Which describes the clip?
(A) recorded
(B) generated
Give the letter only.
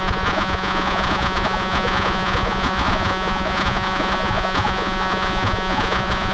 B